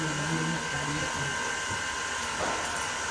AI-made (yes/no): no